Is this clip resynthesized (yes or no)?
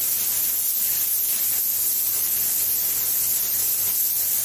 no